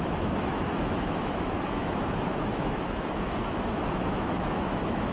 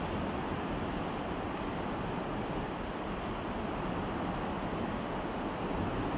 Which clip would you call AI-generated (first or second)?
first